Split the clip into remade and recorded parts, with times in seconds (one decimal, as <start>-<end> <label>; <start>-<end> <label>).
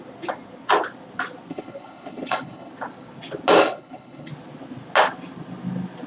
0.0-1.5 recorded; 1.5-2.7 remade; 2.7-3.6 recorded; 3.6-4.3 remade; 4.3-6.1 recorded